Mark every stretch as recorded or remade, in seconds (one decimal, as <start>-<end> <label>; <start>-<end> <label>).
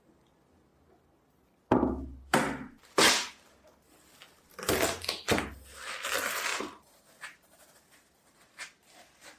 0.0-6.5 recorded; 6.5-9.4 remade